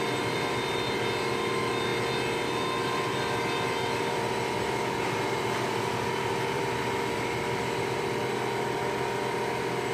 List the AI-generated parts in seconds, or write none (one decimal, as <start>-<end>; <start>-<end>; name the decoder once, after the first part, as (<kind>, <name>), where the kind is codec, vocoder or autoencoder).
0.0-9.9 (vocoder, BigVGAN v2)